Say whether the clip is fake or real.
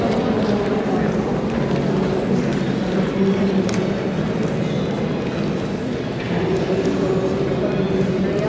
real